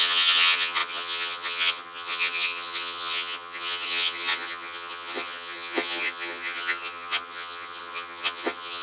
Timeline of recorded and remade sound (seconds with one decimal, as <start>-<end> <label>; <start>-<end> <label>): 0.0-8.8 remade